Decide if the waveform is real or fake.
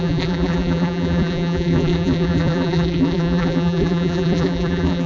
fake